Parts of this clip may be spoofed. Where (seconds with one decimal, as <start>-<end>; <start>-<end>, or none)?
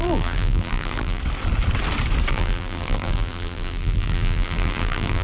0.0-1.2; 2.3-5.2